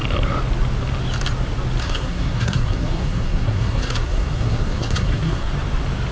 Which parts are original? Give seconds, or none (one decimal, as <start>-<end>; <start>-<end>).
0.0-1.8; 5.5-6.1